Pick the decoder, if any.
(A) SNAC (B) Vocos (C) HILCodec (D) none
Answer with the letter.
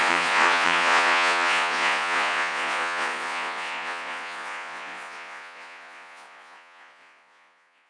B